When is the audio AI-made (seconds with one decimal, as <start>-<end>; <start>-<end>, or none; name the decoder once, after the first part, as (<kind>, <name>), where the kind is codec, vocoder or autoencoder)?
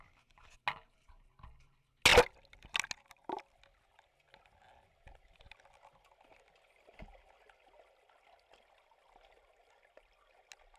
none